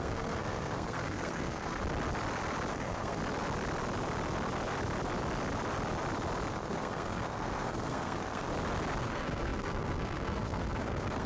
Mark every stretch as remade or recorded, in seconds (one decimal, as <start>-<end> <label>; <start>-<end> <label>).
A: 0.0-1.8 remade; 1.8-2.7 recorded; 2.7-3.2 remade; 3.2-6.5 recorded; 6.5-8.5 remade; 8.5-9.0 recorded; 9.0-11.3 remade